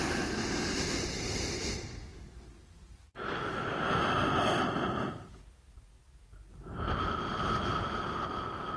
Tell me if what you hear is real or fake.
real